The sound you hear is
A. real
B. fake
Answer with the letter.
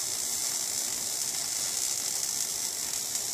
A